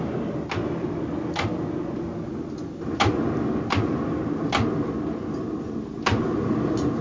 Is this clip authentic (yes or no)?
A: yes